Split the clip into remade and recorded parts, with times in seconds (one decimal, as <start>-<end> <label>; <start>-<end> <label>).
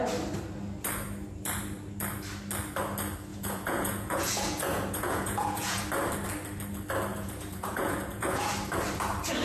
0.0-3.3 recorded; 3.3-5.8 remade; 5.8-7.1 recorded; 7.1-8.5 remade; 8.5-9.4 recorded